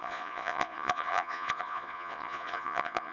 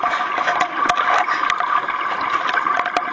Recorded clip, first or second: second